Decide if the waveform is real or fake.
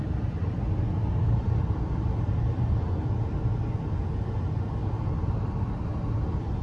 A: real